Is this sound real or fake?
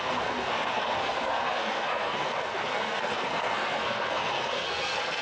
fake